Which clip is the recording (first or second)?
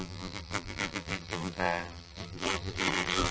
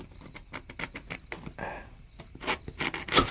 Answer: second